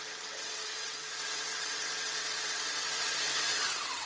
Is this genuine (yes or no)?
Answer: no